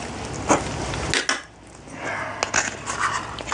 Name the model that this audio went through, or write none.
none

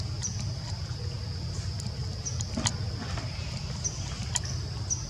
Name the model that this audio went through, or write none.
none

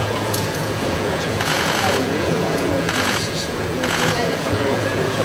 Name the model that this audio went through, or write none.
vocoder, Vocos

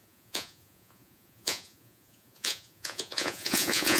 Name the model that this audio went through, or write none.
vocoder, Vocos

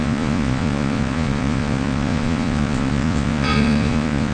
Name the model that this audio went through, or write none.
vocoder, Vocos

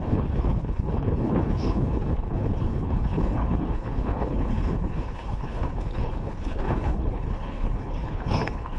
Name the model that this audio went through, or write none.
codec, HILCodec